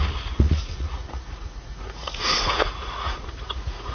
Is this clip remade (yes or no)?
yes